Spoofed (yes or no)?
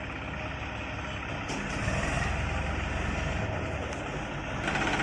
no